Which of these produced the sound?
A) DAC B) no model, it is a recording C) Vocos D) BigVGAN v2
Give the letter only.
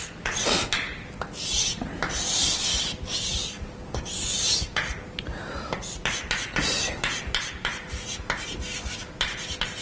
B